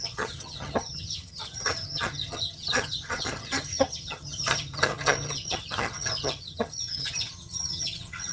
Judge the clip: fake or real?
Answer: fake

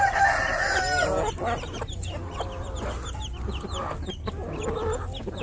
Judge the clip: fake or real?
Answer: real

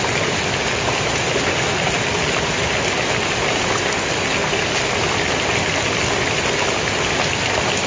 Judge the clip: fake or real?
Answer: real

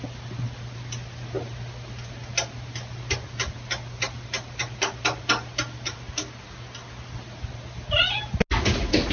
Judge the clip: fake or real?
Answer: real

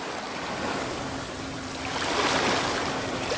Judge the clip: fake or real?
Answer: real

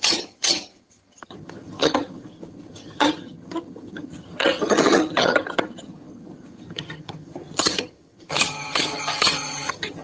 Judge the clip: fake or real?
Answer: fake